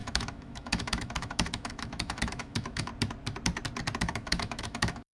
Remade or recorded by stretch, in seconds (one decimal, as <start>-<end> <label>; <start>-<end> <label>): 0.0-2.9 remade; 2.9-4.0 recorded; 4.0-5.1 remade